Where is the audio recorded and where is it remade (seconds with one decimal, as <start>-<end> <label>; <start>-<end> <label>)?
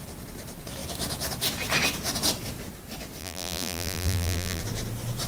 0.0-3.2 recorded; 3.2-4.6 remade; 4.6-5.3 recorded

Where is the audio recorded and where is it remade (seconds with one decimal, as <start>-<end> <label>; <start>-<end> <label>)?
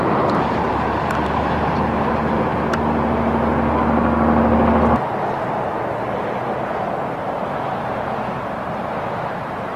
0.0-2.5 remade; 2.5-7.4 recorded; 7.4-9.8 remade